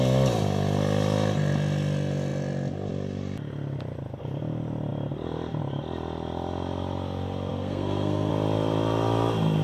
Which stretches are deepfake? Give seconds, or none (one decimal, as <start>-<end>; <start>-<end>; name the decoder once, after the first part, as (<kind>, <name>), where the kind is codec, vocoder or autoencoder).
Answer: 7.5-8.3 (codec, SNAC)